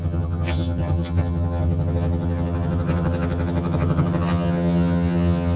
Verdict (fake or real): fake